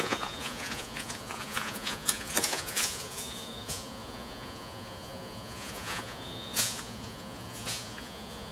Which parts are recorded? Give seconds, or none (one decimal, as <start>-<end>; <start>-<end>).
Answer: none